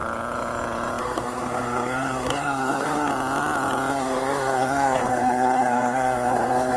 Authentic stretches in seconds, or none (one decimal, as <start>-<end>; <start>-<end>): 0.0-1.0; 3.1-3.9